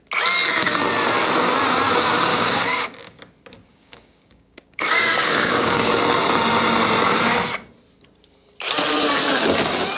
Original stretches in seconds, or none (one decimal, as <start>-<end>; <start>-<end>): 0.0-2.3; 3.2-3.7; 5.9-10.0